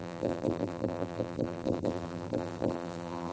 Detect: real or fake fake